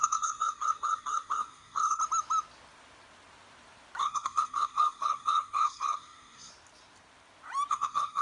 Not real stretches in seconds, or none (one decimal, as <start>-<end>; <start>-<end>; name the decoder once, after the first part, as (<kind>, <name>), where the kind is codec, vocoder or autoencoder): 0.0-2.0 (codec, SNAC); 4.0-6.5; 7.7-8.2